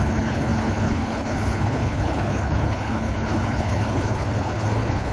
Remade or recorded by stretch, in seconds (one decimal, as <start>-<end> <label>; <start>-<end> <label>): 0.0-5.1 remade

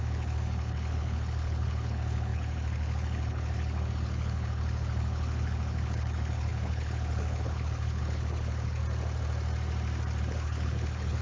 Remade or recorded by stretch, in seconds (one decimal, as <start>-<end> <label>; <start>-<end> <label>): 0.0-8.8 remade; 8.8-10.2 recorded; 10.2-11.2 remade

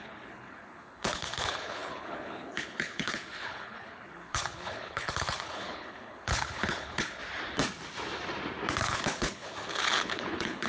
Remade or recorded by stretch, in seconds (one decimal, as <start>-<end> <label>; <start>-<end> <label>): 0.0-7.2 remade; 7.2-8.8 recorded; 8.8-10.7 remade

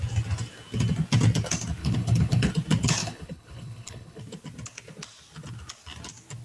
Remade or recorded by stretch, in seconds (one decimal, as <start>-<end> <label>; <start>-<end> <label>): 0.0-1.8 recorded; 1.8-2.5 remade; 2.5-3.0 recorded; 3.0-4.2 remade; 4.2-6.4 recorded

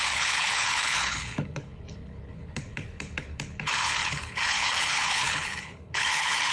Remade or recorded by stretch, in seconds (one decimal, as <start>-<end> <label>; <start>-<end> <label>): 0.0-6.5 remade

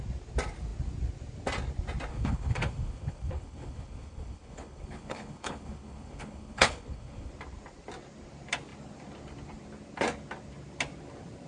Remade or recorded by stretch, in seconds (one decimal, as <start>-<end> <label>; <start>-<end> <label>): 0.0-2.1 recorded; 2.1-7.3 remade; 7.3-11.5 recorded

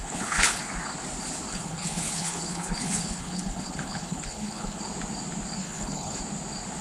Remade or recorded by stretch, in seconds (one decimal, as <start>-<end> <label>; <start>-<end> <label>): 0.0-0.6 remade; 0.6-1.5 recorded; 1.5-4.8 remade; 4.8-5.6 recorded; 5.6-6.2 remade; 6.2-6.8 recorded

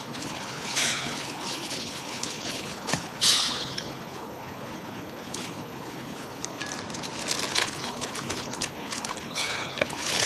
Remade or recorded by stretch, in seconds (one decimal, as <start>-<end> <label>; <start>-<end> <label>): 0.0-6.6 remade; 6.6-7.5 recorded; 7.5-10.3 remade